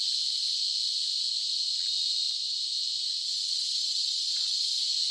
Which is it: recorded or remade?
remade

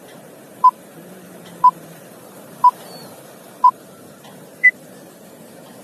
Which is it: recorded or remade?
remade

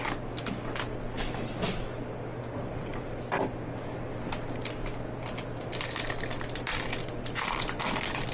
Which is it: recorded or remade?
recorded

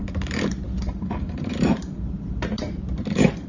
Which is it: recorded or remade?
remade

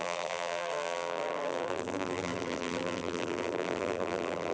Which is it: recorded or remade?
remade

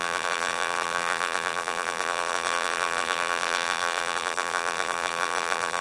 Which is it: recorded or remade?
remade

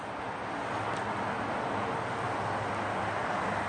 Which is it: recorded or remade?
recorded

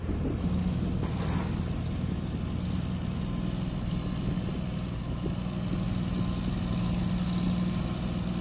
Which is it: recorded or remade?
recorded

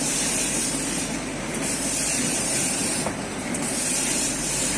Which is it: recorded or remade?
remade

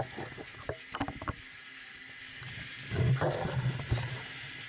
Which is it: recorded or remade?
recorded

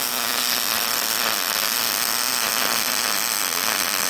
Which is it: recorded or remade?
recorded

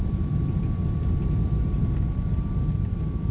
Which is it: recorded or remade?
recorded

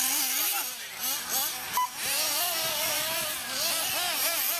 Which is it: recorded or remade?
recorded